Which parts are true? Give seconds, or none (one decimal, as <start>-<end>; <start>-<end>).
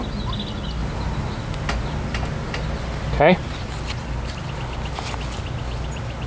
0.0-6.3